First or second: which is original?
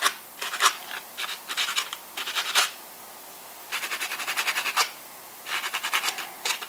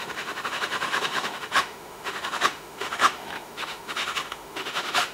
first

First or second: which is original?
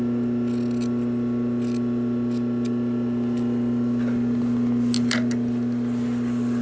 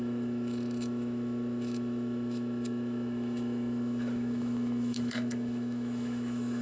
first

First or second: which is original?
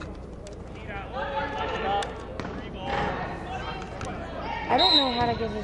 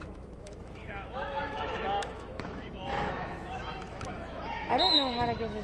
first